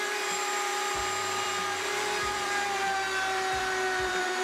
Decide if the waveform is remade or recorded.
remade